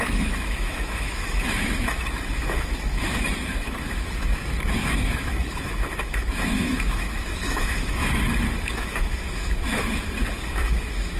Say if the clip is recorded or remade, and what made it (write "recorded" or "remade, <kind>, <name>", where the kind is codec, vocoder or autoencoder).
remade, autoencoder, DAC-VAE